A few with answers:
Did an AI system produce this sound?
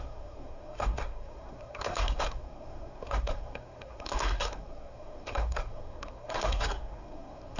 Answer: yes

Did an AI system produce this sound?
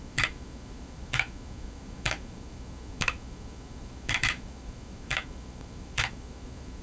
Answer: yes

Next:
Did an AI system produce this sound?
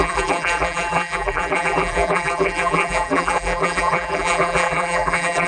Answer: yes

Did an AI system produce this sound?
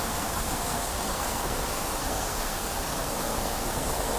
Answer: yes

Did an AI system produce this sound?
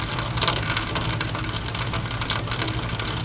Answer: no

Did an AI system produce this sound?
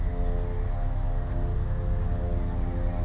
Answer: no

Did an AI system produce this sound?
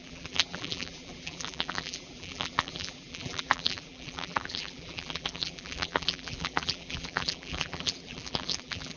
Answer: yes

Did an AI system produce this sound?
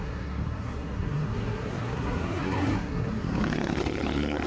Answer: yes